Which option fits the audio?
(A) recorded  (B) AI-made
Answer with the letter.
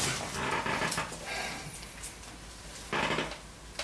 A